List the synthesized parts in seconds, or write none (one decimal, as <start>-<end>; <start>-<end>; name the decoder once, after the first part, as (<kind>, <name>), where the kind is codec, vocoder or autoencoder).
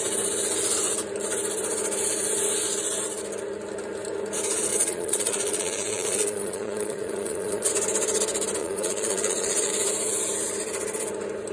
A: 4.7-7.7 (vocoder, Vocos); 8.6-9.7